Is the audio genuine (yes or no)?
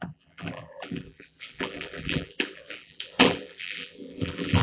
no